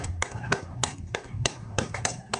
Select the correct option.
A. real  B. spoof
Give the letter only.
B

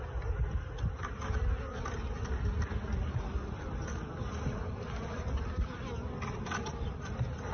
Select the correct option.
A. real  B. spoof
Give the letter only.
A